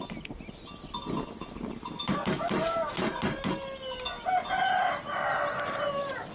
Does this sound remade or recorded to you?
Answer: recorded